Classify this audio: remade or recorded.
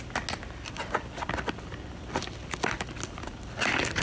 recorded